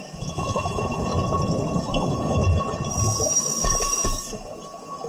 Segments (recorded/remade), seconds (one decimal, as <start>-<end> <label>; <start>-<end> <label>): 0.0-1.1 remade; 1.1-1.8 recorded; 1.8-2.4 remade; 2.4-3.2 recorded; 3.2-5.1 remade